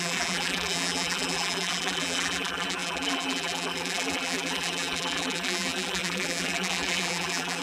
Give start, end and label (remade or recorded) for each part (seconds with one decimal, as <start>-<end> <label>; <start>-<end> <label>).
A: 0.0-7.6 remade

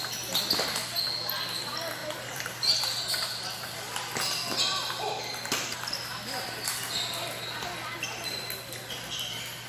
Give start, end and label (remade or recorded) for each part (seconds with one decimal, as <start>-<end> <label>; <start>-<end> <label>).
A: 0.0-2.0 recorded; 2.0-2.8 remade; 2.8-9.7 recorded

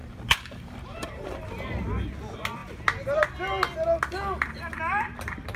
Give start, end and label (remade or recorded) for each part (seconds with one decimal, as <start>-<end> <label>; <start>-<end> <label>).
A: 0.0-1.7 remade; 1.7-5.6 recorded

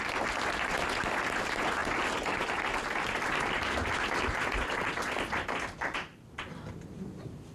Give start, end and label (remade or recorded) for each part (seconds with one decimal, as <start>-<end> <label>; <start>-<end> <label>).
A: 0.0-7.5 recorded

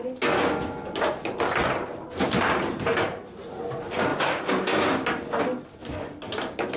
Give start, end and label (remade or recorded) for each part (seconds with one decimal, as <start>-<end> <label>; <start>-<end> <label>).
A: 0.0-1.6 recorded; 1.6-3.6 remade; 3.6-6.8 recorded

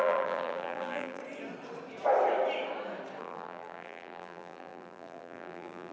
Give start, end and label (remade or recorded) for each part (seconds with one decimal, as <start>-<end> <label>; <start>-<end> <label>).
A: 0.0-1.2 remade; 1.2-3.2 recorded; 3.2-5.9 remade

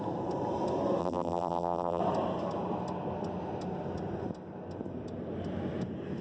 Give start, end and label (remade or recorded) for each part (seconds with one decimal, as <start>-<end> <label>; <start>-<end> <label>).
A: 0.0-1.0 recorded; 1.0-2.0 remade; 2.0-6.2 recorded

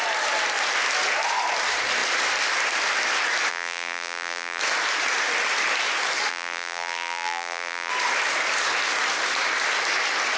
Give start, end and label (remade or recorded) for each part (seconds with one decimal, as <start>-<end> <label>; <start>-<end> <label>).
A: 0.0-3.5 recorded; 3.5-4.6 remade; 4.6-6.3 recorded; 6.3-7.9 remade; 7.9-10.4 recorded